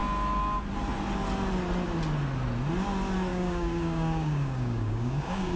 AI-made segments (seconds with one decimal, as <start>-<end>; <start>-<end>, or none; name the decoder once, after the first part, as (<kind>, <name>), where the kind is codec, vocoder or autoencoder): 3.3-5.6 (codec, DAC)

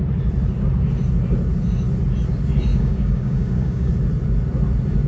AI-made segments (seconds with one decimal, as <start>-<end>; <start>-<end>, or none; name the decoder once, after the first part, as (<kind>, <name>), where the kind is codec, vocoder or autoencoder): 2.7-3.9 (codec, DAC)

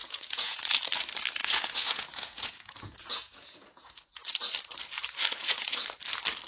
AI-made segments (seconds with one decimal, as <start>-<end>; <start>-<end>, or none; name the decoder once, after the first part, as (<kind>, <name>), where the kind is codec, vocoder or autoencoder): 0.0-0.6 (vocoder, Vocos); 1.4-4.4; 5.3-5.8

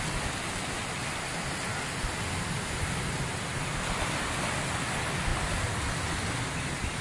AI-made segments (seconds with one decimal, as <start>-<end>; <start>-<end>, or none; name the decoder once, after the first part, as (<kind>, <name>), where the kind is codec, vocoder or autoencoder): none

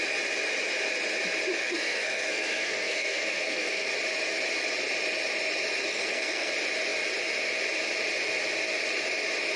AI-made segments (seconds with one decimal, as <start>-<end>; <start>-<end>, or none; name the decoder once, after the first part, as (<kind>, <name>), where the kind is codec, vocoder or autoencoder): 1.6-3.9 (codec, SNAC); 5.9-6.5

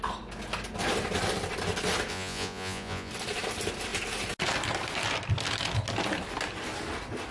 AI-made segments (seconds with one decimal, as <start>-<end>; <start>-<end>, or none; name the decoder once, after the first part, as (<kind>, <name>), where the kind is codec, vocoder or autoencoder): 2.1-3.1 (vocoder, Vocos)

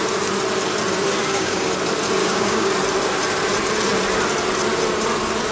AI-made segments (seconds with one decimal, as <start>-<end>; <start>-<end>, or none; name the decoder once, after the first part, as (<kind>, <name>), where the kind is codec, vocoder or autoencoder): 1.2-1.7 (codec, DAC); 2.2-2.7